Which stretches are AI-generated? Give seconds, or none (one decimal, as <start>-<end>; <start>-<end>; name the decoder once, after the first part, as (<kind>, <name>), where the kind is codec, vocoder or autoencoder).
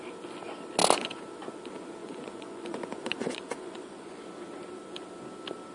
2.0-4.2 (vocoder, Vocos)